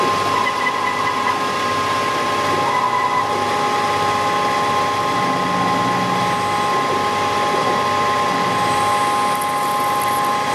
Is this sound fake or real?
real